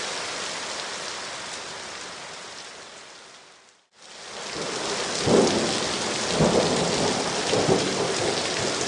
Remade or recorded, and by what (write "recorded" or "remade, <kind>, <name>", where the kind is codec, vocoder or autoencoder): recorded